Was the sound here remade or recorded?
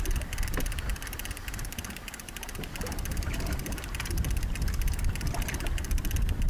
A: remade